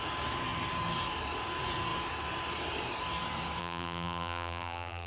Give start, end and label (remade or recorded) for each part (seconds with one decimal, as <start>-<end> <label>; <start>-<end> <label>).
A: 0.0-3.6 recorded; 3.6-5.1 remade

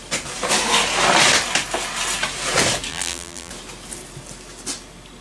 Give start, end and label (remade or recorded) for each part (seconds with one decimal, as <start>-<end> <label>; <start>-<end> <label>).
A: 0.0-2.9 recorded; 2.9-3.5 remade; 3.5-5.2 recorded

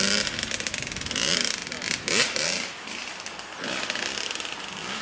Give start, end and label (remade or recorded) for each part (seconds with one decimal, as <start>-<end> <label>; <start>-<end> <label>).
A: 0.0-5.0 recorded